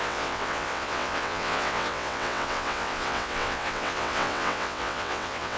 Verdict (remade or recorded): remade